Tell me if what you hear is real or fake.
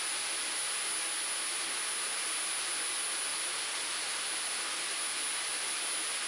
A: real